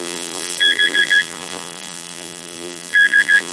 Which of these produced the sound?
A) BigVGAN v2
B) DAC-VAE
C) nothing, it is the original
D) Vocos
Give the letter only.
A